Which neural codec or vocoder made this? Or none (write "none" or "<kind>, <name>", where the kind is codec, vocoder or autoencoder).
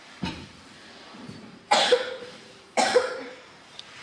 vocoder, BigVGAN v2